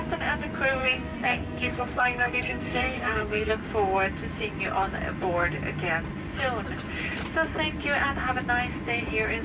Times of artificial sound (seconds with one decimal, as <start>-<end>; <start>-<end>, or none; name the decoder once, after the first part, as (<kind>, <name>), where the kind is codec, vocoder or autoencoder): 0.8-3.5 (codec, SNAC)